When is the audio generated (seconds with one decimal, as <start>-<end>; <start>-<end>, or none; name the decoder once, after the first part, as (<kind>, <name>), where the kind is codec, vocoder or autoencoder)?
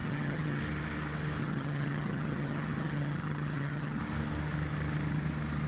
0.0-0.6 (vocoder, HiFi-GAN); 1.4-4.0